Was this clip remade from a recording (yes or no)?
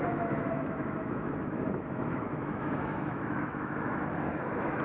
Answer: yes